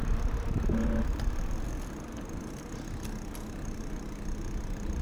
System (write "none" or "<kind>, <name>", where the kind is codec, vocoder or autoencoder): none